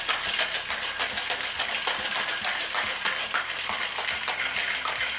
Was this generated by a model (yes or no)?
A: no